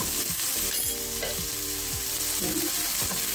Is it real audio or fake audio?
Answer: real